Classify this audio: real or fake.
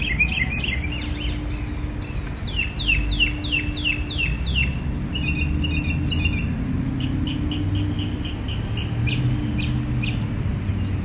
real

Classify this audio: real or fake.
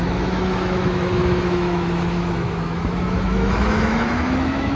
fake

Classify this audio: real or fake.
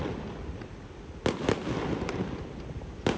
real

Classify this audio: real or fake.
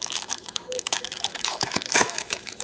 fake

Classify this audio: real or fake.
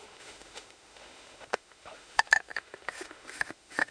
fake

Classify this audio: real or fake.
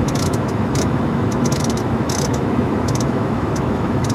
fake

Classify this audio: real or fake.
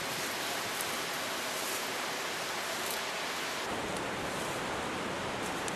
real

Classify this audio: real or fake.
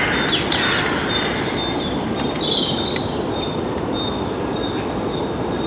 real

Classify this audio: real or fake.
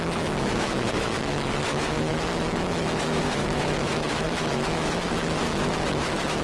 fake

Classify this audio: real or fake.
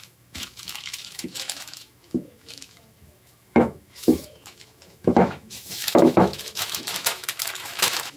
fake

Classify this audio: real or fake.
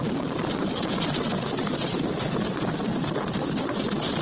real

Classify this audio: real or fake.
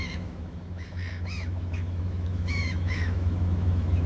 fake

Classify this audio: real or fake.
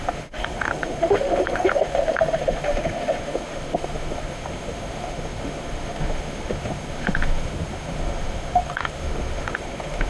fake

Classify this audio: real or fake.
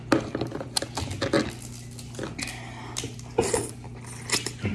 real